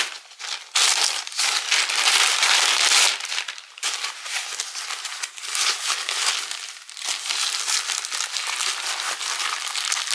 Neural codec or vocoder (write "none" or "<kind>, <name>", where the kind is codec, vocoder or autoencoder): none